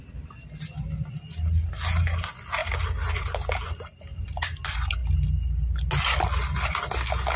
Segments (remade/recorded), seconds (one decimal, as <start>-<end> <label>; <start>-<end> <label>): 0.0-7.4 recorded

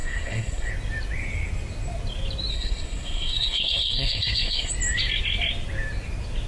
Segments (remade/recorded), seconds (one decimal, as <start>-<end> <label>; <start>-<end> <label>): 0.0-0.7 remade; 0.7-2.5 recorded; 2.5-4.7 remade; 4.7-6.5 recorded

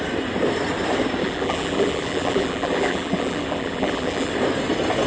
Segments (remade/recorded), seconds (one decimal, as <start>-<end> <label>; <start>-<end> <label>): 0.0-1.2 recorded; 1.2-4.3 remade; 4.3-5.1 recorded